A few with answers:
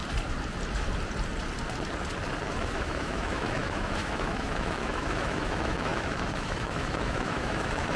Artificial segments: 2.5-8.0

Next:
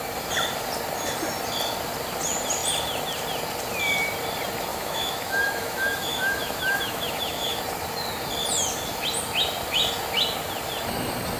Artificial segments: 4.7-7.6

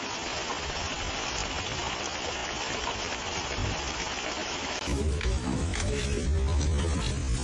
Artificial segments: 4.4-6.0

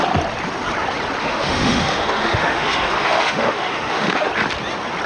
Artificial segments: 1.2-4.3